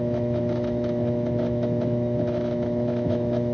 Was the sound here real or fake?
fake